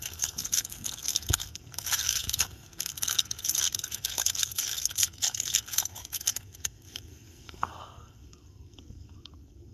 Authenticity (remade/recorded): remade